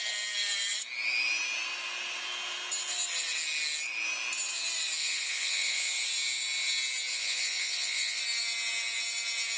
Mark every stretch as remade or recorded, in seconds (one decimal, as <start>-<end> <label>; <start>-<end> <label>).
0.0-5.0 recorded; 5.0-5.9 remade; 5.9-7.1 recorded; 7.1-8.2 remade; 8.2-9.6 recorded